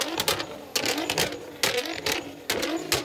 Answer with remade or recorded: recorded